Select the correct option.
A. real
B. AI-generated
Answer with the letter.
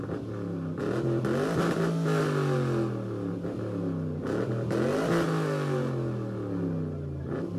A